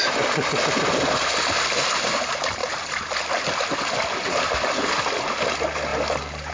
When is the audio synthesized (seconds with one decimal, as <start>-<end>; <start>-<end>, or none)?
none